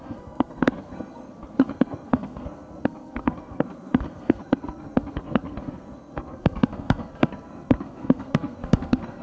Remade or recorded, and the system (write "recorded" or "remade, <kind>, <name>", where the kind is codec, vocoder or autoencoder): remade, codec, SNAC